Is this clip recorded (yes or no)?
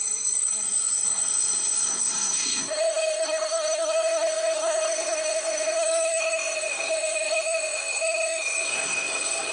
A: no